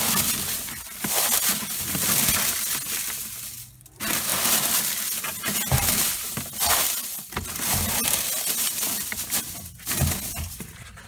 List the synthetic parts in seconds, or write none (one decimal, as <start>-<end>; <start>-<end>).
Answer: none